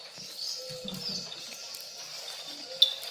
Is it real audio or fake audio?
real